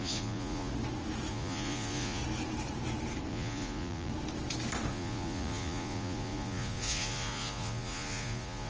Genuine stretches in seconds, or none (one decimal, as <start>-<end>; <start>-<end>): 0.7-1.3; 2.2-3.3; 4.1-4.9